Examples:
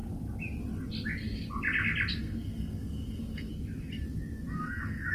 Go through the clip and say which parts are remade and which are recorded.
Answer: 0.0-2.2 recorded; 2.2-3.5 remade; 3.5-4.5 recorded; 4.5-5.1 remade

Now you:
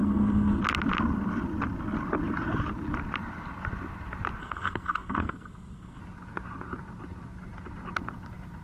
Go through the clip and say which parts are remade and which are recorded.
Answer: 0.0-0.6 remade; 0.6-4.4 recorded; 4.4-6.0 remade; 6.0-8.6 recorded

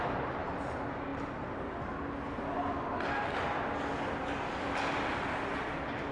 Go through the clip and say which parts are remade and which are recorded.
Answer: 0.0-6.1 recorded

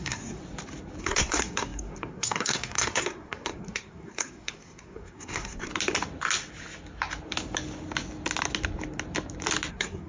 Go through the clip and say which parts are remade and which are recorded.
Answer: 0.0-0.4 remade; 0.4-1.0 recorded; 1.0-5.7 remade; 5.7-9.7 recorded; 9.7-10.1 remade

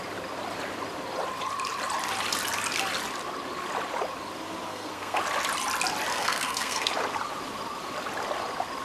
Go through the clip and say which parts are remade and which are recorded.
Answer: 0.0-4.7 recorded; 4.7-5.2 remade; 5.2-6.1 recorded; 6.1-6.9 remade; 6.9-8.8 recorded

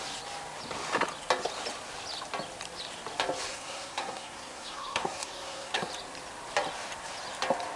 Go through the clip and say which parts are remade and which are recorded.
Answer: 0.0-3.5 recorded; 3.5-5.9 remade; 5.9-7.8 recorded